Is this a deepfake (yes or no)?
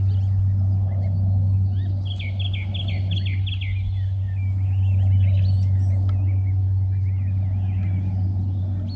no